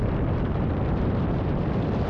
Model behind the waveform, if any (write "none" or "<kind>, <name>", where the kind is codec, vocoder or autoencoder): none